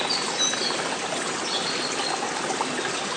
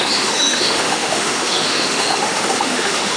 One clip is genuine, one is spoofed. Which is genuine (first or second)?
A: first